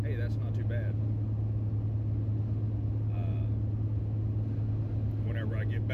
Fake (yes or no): no